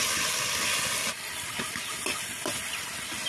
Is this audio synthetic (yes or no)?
no